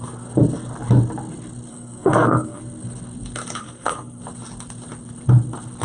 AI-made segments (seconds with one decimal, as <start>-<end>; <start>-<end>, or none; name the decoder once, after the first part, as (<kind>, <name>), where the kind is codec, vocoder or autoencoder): 1.7-2.6 (codec, SNAC); 3.6-4.2